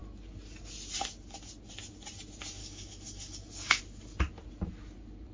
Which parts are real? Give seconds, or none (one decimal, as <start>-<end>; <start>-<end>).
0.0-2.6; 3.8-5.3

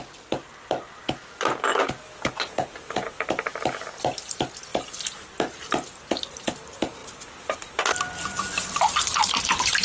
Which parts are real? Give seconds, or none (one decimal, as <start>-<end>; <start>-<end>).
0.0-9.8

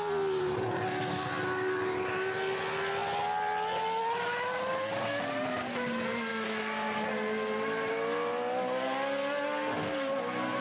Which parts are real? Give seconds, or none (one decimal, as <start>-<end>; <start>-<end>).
0.0-10.6